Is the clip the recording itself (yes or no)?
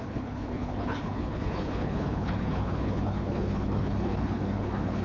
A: no